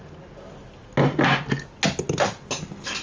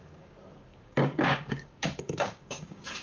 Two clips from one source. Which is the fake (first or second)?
second